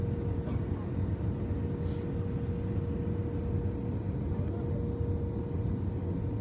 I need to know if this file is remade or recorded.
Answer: recorded